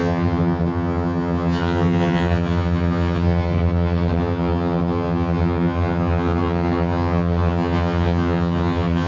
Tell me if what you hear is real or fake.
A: fake